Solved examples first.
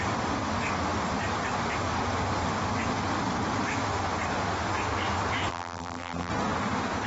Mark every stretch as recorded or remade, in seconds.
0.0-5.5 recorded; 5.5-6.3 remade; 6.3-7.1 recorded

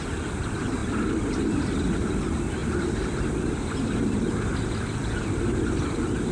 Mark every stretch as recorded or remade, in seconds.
0.0-6.3 recorded

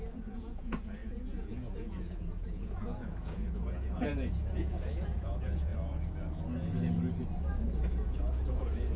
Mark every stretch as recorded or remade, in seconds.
0.0-5.7 remade; 5.7-7.9 recorded; 7.9-9.0 remade

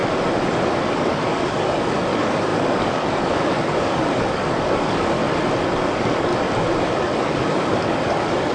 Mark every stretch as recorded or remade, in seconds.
0.0-1.0 recorded; 1.0-5.2 remade; 5.2-5.8 recorded; 5.8-6.3 remade; 6.3-6.8 recorded; 6.8-8.5 remade

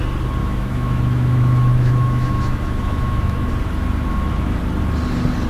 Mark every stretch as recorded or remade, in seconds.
0.0-0.4 recorded; 0.4-3.5 remade; 3.5-4.1 recorded; 4.1-4.6 remade; 4.6-5.5 recorded

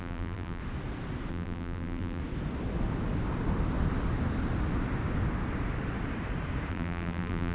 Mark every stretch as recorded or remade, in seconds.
0.0-0.6 remade; 0.6-1.3 recorded; 1.3-2.2 remade; 2.2-6.7 recorded; 6.7-7.5 remade

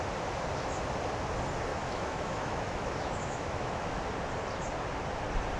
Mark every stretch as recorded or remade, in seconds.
0.0-1.7 recorded; 1.7-4.0 remade; 4.0-5.6 recorded

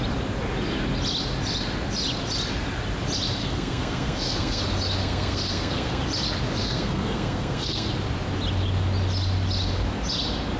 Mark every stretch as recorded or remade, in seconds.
0.0-3.4 recorded; 3.4-4.6 remade; 4.6-5.0 recorded; 5.0-6.0 remade; 6.0-6.6 recorded; 6.6-7.9 remade; 7.9-10.6 recorded